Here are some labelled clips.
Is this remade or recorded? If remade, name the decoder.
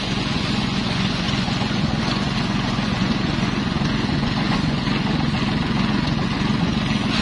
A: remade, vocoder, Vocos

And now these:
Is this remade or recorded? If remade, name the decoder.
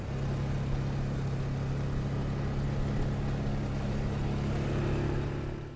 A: recorded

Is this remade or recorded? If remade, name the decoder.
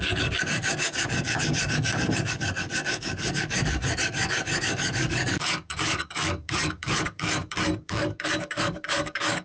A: remade, codec, DAC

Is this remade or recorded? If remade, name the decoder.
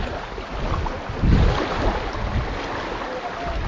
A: recorded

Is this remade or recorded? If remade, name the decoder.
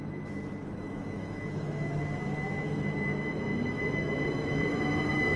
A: remade, autoencoder, DAC-VAE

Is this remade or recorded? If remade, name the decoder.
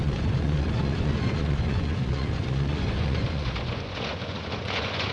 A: remade, vocoder, Vocos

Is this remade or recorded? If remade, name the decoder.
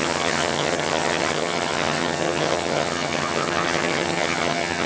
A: remade, vocoder, HiFi-GAN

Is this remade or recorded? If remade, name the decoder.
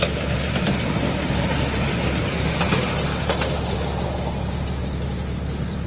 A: recorded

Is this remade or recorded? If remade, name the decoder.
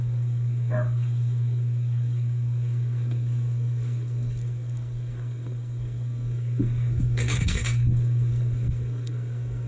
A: remade, codec, SNAC